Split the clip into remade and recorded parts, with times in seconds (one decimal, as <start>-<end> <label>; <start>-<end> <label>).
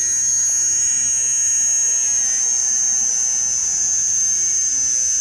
0.0-3.6 recorded; 3.6-4.7 remade; 4.7-5.2 recorded